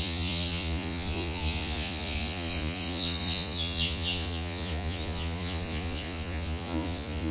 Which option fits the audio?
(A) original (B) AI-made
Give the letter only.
B